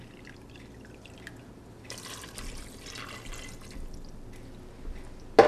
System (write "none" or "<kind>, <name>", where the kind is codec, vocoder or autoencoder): none